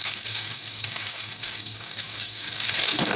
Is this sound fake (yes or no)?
yes